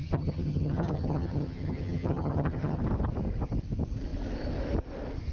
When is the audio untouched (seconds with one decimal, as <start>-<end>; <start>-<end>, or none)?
2.8-5.3